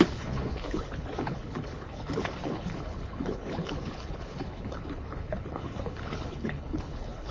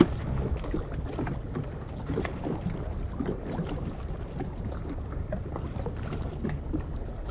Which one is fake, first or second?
first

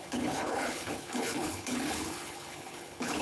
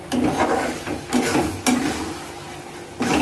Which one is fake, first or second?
first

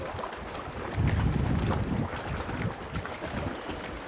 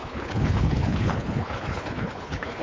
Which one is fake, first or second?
second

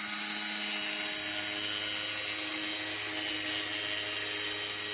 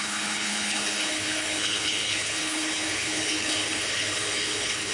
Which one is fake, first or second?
second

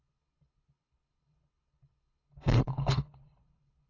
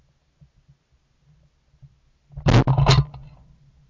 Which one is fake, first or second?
first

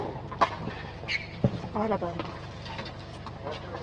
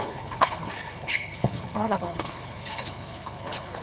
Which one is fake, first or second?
second